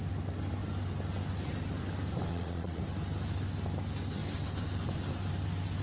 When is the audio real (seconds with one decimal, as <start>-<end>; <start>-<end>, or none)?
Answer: 0.0-2.3; 2.8-5.8